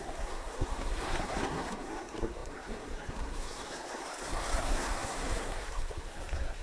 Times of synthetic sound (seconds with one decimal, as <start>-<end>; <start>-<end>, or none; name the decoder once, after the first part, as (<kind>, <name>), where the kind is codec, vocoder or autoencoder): 0.0-6.6 (codec, SNAC)